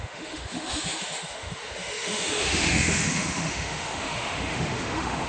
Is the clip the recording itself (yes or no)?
no